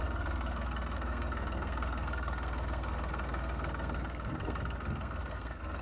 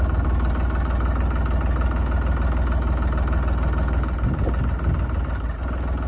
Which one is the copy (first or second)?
first